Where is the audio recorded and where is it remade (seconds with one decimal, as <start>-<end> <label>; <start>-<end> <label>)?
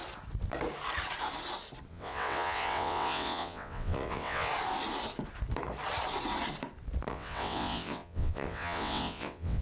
0.0-1.9 recorded; 1.9-4.5 remade; 4.5-7.1 recorded; 7.1-9.6 remade